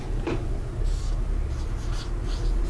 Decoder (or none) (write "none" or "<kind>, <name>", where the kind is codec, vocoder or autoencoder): none